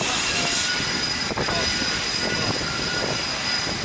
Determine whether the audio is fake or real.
real